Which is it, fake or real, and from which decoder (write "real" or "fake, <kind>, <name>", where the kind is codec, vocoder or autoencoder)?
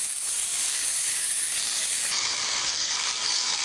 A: fake, codec, DAC